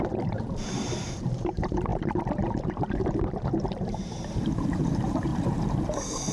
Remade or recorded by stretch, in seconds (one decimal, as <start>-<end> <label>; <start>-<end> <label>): 0.0-5.3 remade; 5.3-6.3 recorded